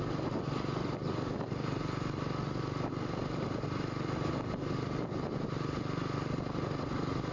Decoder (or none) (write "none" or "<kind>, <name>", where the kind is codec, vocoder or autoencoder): none